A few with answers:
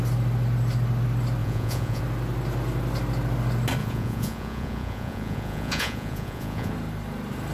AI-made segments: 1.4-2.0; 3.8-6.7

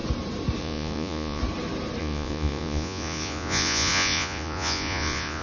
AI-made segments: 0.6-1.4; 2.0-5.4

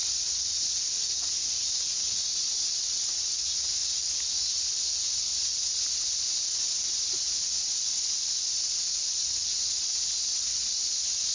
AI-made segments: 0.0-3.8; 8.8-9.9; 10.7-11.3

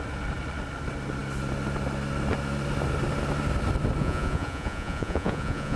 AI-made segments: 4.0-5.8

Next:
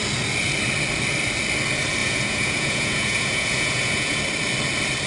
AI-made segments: 2.0-4.2

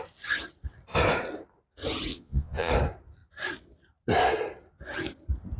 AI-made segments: 2.1-2.7